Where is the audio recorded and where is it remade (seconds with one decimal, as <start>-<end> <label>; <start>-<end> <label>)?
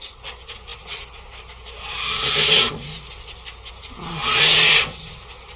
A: 0.0-5.6 recorded